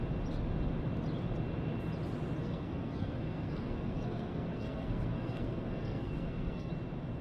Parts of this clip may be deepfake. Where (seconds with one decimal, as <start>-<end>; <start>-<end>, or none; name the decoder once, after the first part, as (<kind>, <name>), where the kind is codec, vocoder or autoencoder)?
2.4-6.7 (codec, SNAC)